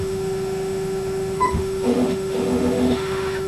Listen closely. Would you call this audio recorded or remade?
remade